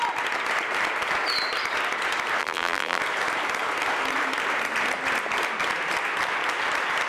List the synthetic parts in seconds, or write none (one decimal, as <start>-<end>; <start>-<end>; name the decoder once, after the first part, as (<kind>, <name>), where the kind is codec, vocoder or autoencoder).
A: 2.4-3.0 (vocoder, BigVGAN v2)